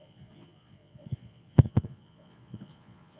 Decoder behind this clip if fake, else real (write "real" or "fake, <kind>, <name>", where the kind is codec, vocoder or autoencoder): fake, vocoder, Vocos